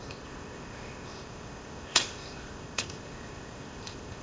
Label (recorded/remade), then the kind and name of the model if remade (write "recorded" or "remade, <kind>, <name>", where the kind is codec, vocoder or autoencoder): remade, codec, ZipCodec